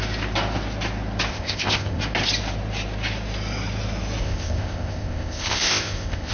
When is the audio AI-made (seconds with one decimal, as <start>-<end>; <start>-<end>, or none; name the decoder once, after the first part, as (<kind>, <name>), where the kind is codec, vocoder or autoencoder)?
1.3-2.0 (codec, ZipCodec); 4.2-6.3